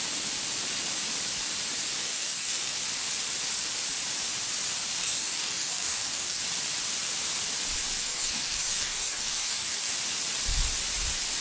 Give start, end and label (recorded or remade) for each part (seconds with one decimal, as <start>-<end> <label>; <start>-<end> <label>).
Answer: 0.0-2.0 recorded; 2.0-2.7 remade; 2.7-5.0 recorded; 5.0-6.4 remade; 6.4-8.0 recorded; 8.0-9.9 remade; 9.9-11.4 recorded